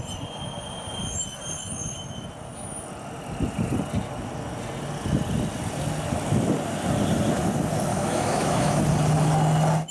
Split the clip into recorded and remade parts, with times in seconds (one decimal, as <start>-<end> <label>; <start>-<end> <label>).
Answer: 0.0-7.9 recorded; 7.9-8.8 remade; 8.8-9.9 recorded